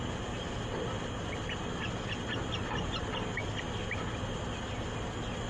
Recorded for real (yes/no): yes